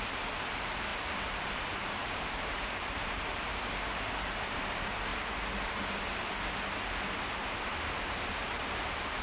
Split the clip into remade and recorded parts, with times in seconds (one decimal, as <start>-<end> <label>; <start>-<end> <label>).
0.0-0.9 recorded; 0.9-4.0 remade; 4.0-7.4 recorded; 7.4-8.0 remade; 8.0-9.2 recorded